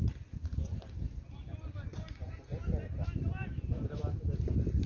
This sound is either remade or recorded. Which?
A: recorded